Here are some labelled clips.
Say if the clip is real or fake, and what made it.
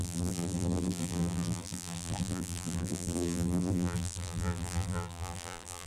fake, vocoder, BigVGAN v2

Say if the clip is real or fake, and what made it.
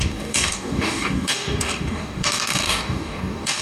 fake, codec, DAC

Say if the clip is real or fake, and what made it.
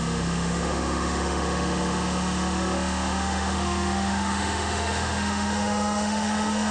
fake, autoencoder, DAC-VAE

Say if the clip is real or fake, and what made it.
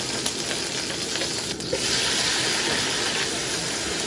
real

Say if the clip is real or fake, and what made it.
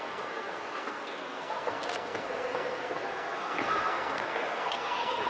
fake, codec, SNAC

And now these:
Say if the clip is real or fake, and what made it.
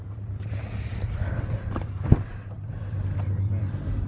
real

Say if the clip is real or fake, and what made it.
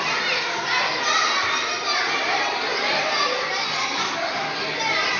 real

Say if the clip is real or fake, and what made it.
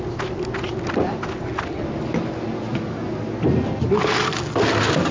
real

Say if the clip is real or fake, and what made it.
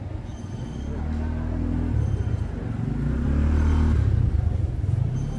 real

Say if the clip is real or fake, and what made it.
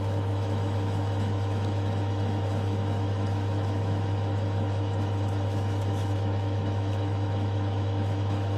fake, autoencoder, DAC-VAE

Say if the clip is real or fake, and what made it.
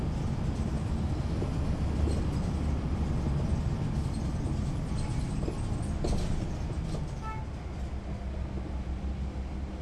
real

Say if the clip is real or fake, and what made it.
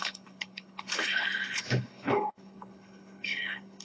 fake, codec, HILCodec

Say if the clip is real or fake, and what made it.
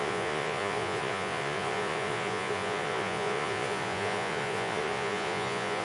fake, vocoder, Vocos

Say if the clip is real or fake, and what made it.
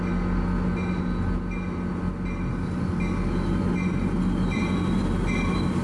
real